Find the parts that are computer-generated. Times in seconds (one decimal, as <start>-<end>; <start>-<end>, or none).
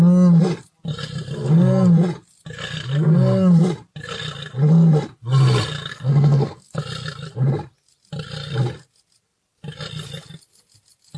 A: 5.9-6.8